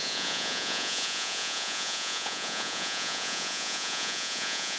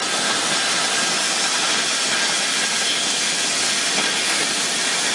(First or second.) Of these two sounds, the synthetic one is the first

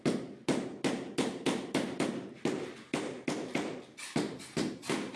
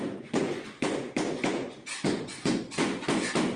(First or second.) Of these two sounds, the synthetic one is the second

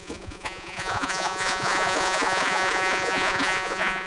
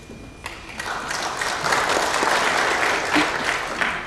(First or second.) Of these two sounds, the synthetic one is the first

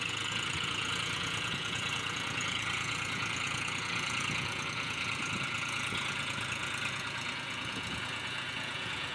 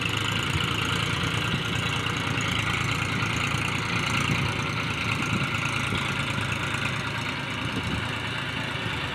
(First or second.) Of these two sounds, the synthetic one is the first